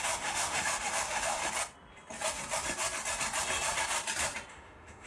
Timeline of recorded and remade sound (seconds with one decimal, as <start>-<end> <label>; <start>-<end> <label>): 0.0-1.4 remade; 1.4-4.5 recorded; 4.5-5.1 remade